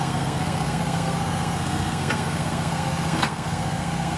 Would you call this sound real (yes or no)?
no